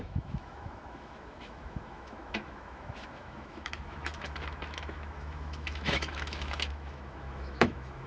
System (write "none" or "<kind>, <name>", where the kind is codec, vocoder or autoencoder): autoencoder, DAC-VAE